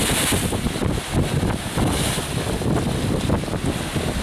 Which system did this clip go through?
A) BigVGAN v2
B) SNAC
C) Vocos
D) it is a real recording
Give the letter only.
D